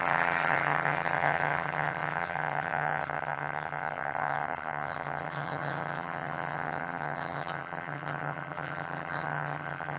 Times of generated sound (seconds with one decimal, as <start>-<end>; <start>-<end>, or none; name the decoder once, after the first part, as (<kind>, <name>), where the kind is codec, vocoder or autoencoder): 0.0-10.0 (vocoder, HiFi-GAN)